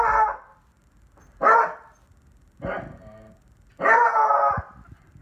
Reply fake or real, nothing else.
real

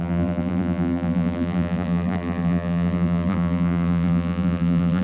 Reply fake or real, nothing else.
fake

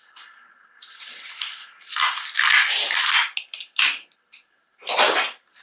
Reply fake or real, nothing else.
real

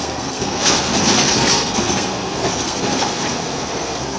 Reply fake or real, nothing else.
fake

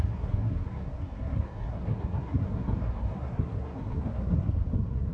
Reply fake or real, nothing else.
fake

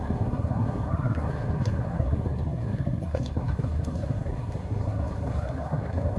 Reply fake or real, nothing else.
fake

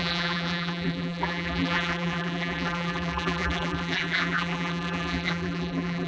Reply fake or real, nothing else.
fake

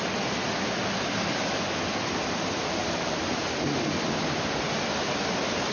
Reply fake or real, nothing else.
real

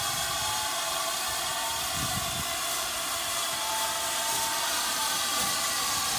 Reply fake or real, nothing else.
real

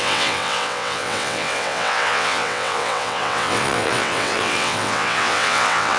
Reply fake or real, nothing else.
fake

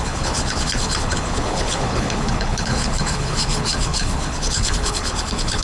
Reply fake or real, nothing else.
fake